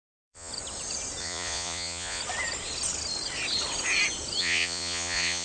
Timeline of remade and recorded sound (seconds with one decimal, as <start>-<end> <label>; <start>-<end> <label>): 0.0-0.5 remade; 0.5-1.2 recorded; 1.2-2.2 remade; 2.2-4.4 recorded; 4.4-5.4 remade